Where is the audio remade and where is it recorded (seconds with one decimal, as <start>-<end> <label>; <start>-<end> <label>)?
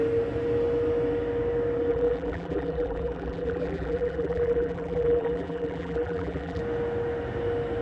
0.0-1.9 recorded; 1.9-6.6 remade; 6.6-7.8 recorded